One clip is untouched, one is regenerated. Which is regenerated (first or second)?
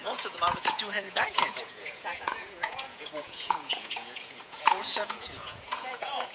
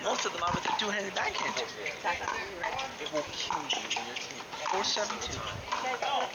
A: first